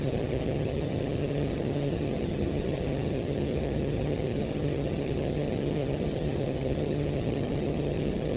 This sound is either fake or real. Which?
fake